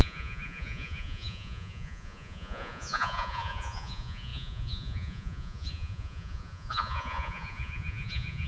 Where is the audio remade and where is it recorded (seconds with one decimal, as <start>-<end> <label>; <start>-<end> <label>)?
0.0-8.5 remade